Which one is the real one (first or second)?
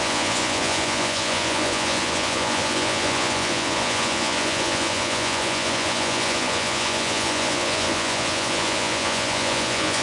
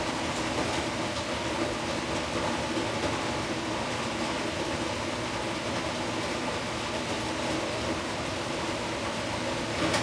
second